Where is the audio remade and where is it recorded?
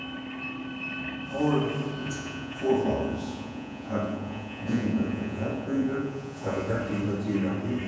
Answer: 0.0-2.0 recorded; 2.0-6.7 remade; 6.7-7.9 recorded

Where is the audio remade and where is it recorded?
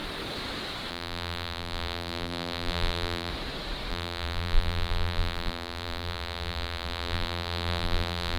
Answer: 0.0-0.9 recorded; 0.9-3.3 remade; 3.3-3.9 recorded; 3.9-8.4 remade